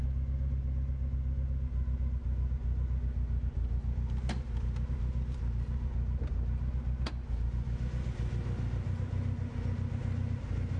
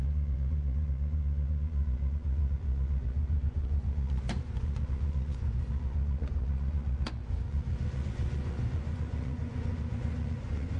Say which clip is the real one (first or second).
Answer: first